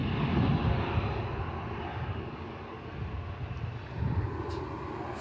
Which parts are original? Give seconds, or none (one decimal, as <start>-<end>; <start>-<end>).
0.0-1.9; 2.9-5.2